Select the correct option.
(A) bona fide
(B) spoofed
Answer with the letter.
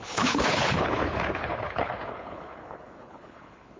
B